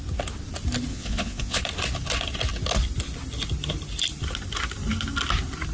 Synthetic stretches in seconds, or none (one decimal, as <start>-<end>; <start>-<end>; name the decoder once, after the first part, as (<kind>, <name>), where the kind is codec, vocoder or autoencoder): 0.9-1.6 (vocoder, Vocos)